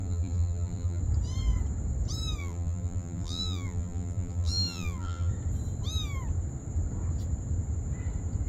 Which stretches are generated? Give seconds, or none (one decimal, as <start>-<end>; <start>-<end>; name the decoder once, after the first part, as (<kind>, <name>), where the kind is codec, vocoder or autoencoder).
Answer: 0.0-1.0 (vocoder, BigVGAN v2); 2.4-5.3